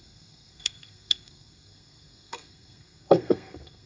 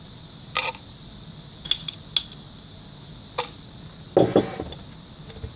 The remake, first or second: first